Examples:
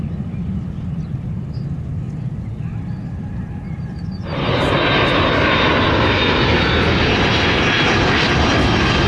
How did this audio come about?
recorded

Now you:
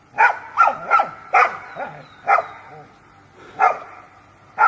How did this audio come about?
recorded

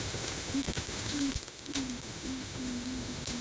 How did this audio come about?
remade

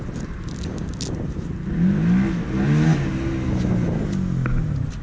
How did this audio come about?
recorded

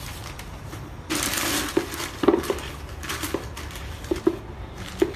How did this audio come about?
recorded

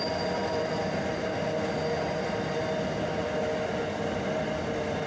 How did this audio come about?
recorded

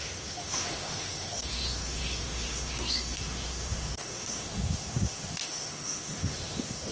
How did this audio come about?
remade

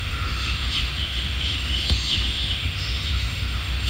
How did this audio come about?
remade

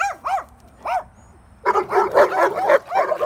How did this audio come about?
recorded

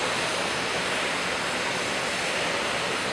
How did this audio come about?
recorded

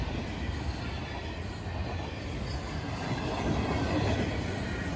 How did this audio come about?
recorded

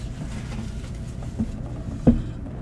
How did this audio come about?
recorded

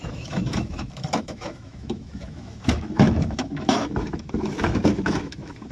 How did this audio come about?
remade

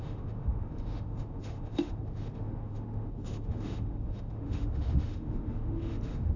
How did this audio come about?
remade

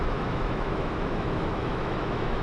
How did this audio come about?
remade